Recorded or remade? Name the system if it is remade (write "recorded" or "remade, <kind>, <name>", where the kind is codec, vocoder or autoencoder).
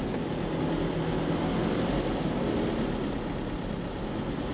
recorded